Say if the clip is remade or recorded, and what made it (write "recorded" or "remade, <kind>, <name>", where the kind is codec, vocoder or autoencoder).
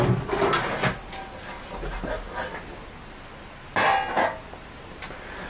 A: recorded